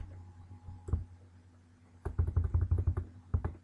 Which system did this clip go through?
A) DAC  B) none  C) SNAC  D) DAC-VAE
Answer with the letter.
B